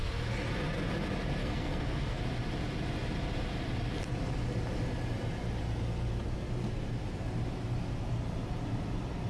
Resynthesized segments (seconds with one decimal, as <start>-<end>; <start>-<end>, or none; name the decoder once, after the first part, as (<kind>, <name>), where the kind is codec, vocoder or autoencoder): 1.4-2.2 (codec, SNAC)